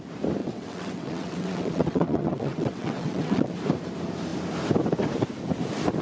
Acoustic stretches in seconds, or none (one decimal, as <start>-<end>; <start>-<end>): 0.0-0.4; 3.5-6.0